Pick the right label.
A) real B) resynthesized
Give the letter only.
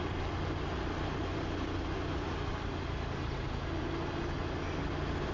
A